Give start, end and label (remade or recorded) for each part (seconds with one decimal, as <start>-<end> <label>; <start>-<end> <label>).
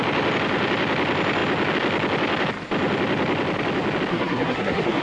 0.0-4.1 recorded; 4.1-5.0 remade